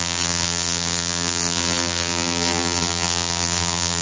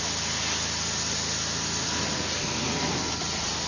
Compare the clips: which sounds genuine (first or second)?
second